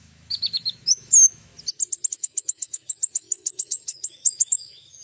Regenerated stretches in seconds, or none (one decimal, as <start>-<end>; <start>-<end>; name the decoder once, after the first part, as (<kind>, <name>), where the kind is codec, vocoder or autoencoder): 0.0-1.5 (autoencoder, DAC-VAE); 2.1-5.0